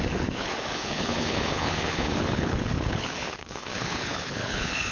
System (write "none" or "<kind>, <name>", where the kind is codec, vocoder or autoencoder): codec, HILCodec